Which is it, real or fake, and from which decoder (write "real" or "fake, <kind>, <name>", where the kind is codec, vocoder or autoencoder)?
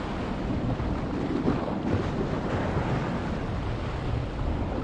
real